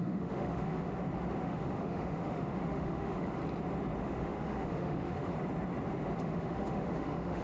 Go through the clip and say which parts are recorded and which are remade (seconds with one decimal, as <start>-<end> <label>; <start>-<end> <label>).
0.0-0.9 remade; 0.9-1.4 recorded; 1.4-3.4 remade; 3.4-4.0 recorded; 4.0-5.3 remade; 5.3-6.2 recorded; 6.2-7.4 remade